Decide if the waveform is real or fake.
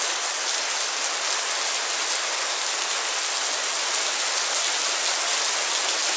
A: real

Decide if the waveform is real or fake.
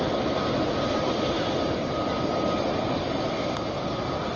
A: real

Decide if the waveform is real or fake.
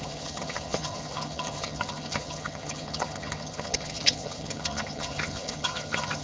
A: fake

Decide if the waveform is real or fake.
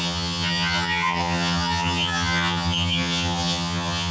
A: fake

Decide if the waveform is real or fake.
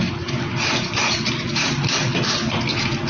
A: real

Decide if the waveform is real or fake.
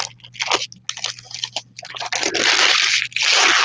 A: real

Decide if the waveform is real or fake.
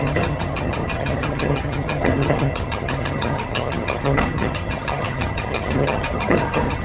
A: fake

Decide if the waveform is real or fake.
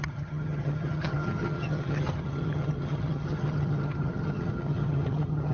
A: fake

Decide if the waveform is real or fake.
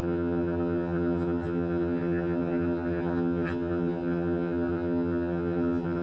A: fake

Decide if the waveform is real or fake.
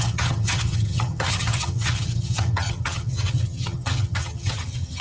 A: fake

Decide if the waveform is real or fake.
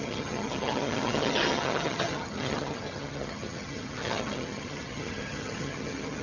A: fake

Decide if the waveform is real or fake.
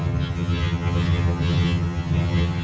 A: fake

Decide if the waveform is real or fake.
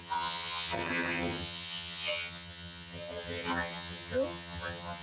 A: fake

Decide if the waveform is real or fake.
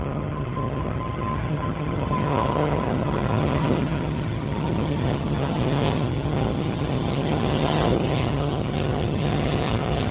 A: fake